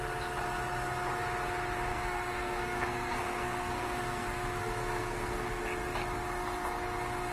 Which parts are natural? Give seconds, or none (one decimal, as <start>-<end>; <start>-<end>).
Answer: 0.0-1.9; 5.6-7.3